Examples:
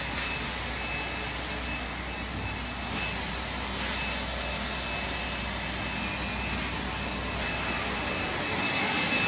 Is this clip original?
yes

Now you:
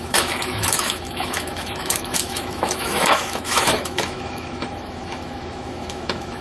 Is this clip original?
no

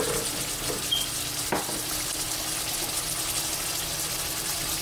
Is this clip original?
yes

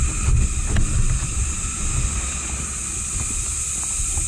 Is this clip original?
yes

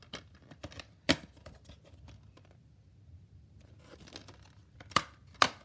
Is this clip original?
yes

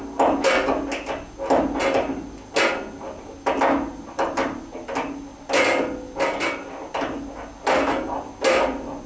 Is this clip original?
yes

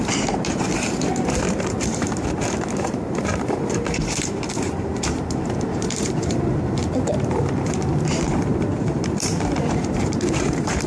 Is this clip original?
no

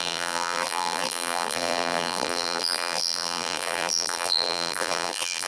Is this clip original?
no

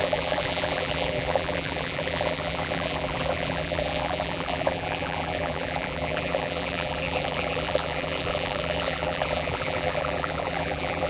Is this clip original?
no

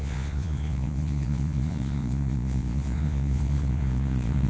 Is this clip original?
no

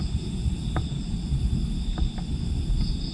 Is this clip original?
yes